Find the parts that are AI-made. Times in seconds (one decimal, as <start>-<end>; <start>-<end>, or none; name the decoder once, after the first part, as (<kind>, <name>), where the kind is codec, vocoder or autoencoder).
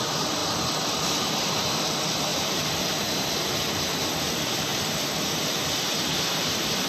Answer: 2.3-4.0 (vocoder, BigVGAN v2); 4.7-5.4